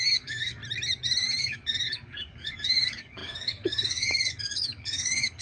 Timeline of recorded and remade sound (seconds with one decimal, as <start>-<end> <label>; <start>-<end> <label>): 0.0-0.6 remade; 0.6-1.4 recorded; 1.4-5.4 remade